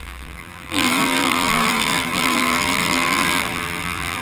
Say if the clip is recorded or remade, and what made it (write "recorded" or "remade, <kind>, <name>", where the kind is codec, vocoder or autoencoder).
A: remade, vocoder, BigVGAN v2